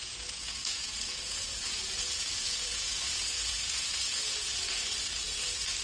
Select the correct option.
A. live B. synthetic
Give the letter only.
B